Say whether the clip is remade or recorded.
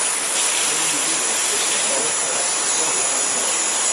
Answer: recorded